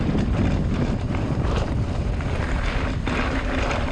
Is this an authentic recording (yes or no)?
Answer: no